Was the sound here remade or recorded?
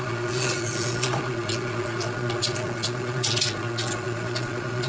remade